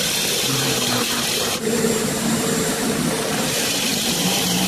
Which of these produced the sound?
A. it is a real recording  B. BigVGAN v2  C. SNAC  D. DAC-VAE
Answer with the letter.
B